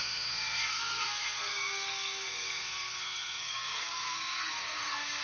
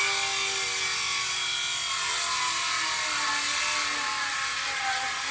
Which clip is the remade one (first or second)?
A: first